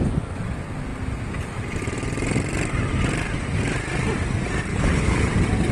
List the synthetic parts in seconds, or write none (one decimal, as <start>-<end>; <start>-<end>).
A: 4.7-5.2